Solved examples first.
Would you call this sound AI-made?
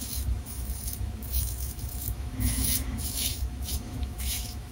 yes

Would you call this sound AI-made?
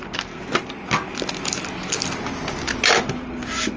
no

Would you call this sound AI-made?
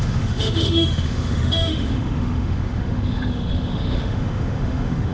yes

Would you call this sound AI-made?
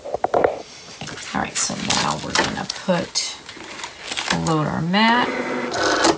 no